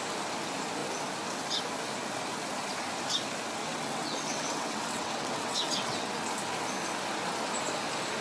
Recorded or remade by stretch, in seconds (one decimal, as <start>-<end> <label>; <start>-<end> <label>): 0.0-3.6 recorded; 3.6-6.1 remade; 6.1-8.2 recorded